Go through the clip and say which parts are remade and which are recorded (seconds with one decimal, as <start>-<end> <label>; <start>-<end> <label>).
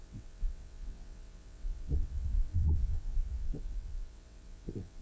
0.0-5.0 remade